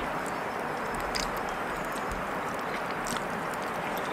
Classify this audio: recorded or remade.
recorded